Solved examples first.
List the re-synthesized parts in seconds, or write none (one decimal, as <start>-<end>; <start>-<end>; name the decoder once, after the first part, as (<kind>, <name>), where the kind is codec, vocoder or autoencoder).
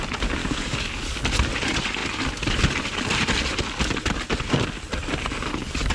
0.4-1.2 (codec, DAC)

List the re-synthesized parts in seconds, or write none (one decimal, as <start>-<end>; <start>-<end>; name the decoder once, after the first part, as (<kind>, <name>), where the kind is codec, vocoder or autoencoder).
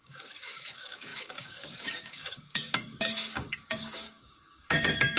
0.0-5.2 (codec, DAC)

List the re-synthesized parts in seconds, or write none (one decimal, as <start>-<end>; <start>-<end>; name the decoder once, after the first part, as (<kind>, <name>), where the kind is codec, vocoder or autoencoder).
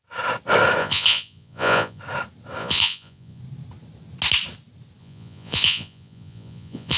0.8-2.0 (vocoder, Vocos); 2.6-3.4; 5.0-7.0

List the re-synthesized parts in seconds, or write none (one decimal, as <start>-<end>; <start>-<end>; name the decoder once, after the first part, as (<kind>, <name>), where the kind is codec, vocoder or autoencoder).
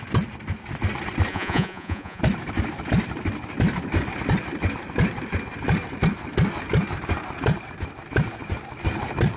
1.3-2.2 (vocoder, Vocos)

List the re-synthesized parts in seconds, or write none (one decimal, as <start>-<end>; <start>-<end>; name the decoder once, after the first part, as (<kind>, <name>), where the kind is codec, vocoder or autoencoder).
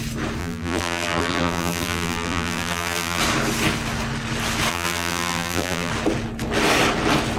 0.4-3.2 (vocoder, BigVGAN v2); 4.7-5.9